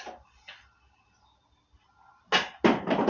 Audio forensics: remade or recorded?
recorded